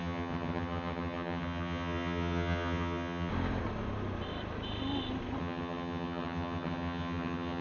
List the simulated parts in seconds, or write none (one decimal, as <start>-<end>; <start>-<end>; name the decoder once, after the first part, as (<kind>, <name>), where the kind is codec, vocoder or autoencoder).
0.0-3.3 (vocoder, HiFi-GAN); 5.4-7.6